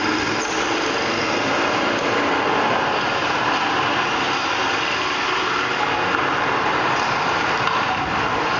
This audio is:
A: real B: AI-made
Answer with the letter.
A